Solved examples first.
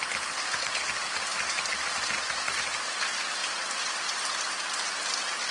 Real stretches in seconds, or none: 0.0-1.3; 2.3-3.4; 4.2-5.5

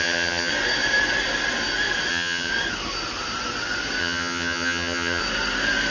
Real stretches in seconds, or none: 0.5-2.1; 2.5-4.0; 5.2-5.9

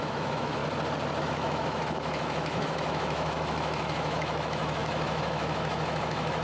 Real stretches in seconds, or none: 0.6-1.2

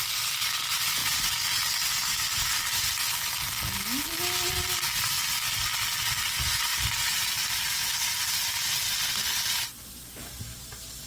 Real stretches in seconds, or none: 0.0-11.1